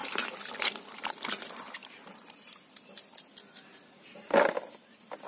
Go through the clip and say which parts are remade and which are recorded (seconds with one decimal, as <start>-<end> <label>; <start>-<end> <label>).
0.0-5.3 remade